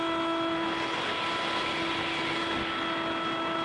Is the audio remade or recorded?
recorded